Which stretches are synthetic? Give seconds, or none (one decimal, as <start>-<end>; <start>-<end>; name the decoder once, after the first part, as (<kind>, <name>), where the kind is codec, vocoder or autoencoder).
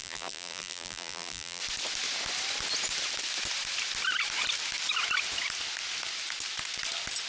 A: 0.0-1.6 (vocoder, BigVGAN v2)